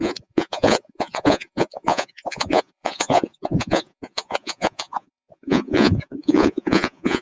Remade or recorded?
remade